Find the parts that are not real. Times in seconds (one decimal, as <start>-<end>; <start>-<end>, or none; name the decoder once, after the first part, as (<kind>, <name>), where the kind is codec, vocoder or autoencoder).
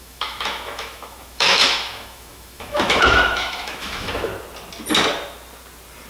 0.0-4.3 (autoencoder, DAC-VAE)